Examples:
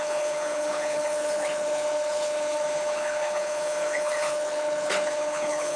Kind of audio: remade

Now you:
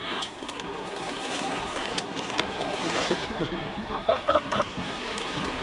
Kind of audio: remade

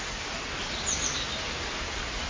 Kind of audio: recorded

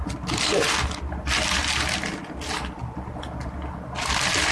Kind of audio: recorded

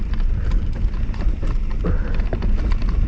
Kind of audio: recorded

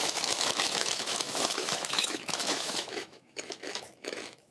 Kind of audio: remade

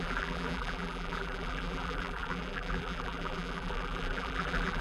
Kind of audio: remade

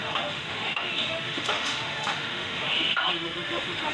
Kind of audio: remade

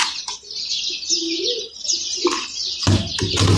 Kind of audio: recorded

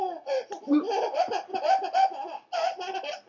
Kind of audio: recorded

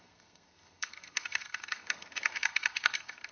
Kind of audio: remade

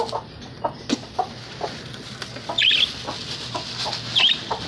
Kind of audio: recorded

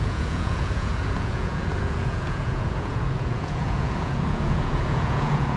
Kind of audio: remade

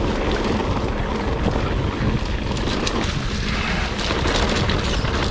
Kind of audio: recorded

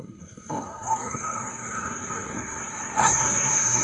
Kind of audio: remade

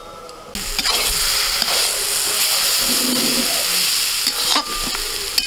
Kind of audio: recorded